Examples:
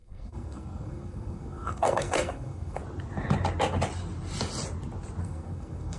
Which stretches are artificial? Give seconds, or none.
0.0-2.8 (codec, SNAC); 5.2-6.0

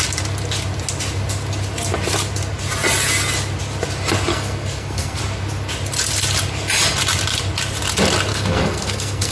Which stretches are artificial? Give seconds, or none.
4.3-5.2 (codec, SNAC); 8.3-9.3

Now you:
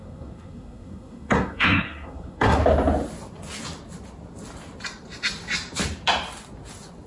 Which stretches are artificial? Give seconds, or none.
0.0-2.6 (codec, SNAC)

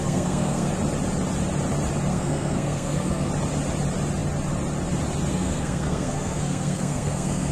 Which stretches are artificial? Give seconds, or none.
0.0-0.7 (codec, SNAC); 2.1-3.3; 5.3-7.5

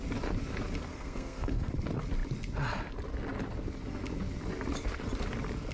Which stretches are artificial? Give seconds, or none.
0.9-1.7 (codec, SNAC)

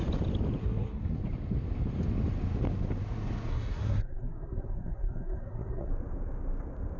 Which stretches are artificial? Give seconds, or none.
0.6-1.2 (codec, SNAC); 3.5-5.9

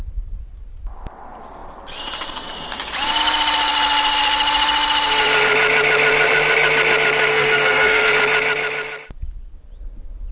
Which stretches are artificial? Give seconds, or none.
7.3-8.1 (codec, SNAC)

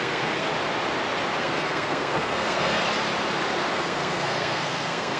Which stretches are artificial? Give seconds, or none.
0.0-0.5 (codec, SNAC); 1.4-2.8; 3.7-5.2